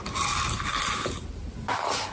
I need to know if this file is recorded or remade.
recorded